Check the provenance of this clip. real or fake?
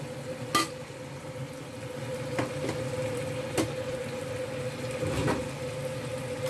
real